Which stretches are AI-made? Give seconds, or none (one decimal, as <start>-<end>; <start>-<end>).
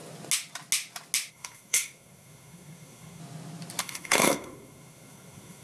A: 1.3-3.2; 3.8-5.6